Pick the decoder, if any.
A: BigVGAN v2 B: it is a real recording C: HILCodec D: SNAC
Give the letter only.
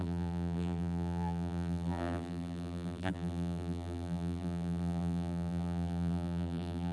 A